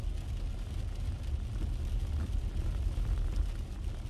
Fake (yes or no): no